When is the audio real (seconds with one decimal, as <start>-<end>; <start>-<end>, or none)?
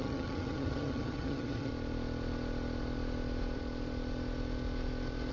1.7-5.3